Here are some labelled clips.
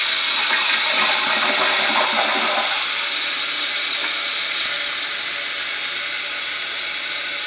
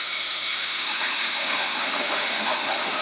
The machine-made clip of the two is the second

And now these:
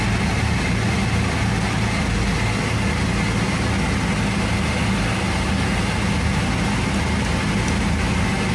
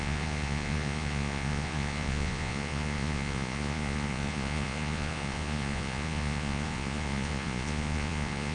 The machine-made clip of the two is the second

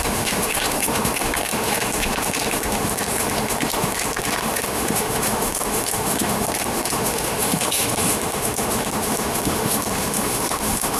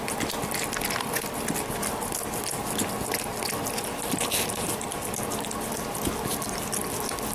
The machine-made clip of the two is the first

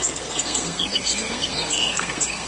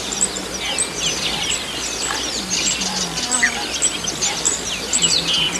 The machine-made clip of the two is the first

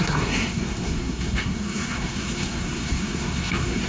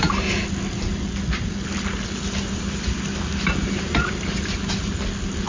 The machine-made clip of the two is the first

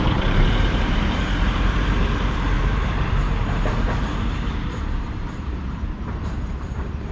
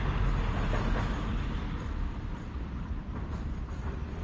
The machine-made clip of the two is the first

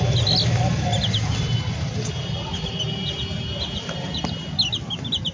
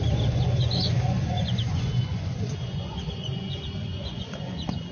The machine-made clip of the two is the second